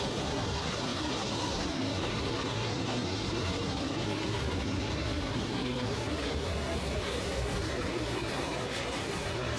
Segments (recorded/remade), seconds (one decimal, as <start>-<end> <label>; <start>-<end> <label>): 0.0-9.6 remade